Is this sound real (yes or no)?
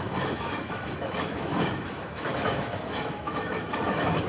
no